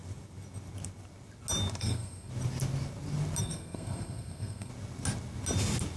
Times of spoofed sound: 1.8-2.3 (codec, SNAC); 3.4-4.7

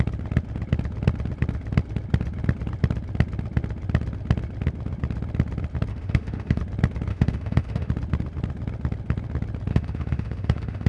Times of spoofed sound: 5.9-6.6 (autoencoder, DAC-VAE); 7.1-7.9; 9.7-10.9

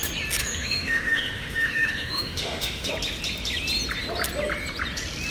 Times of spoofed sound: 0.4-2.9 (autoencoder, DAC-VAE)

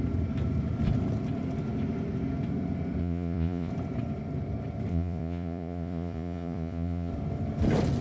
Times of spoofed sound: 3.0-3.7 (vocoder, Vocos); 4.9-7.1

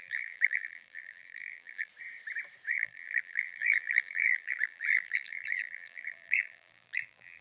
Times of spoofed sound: 0.0-1.9 (vocoder, BigVGAN v2); 2.7-7.4

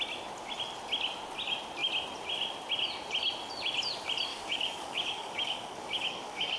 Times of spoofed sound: 4.3-6.6 (codec, DAC)